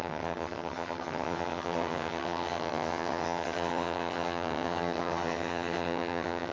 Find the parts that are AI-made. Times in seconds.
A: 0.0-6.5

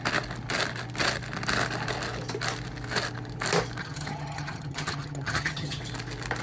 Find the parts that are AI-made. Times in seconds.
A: 3.8-5.8